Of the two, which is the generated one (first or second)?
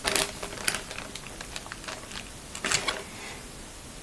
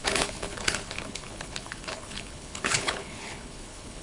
second